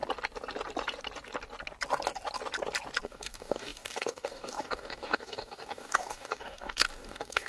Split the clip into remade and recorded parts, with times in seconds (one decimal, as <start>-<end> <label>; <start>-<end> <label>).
0.0-3.0 recorded; 3.0-7.5 remade